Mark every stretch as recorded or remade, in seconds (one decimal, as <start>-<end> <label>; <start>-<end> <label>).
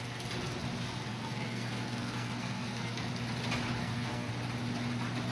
0.0-1.1 recorded; 1.1-3.1 remade; 3.1-3.8 recorded; 3.8-4.3 remade; 4.3-5.3 recorded